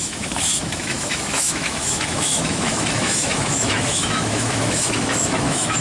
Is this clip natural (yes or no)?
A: no